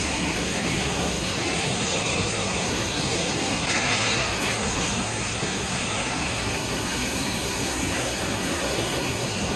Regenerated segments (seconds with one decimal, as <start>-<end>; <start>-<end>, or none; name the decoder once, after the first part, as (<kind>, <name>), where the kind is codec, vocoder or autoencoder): 0.0-9.6 (codec, SNAC)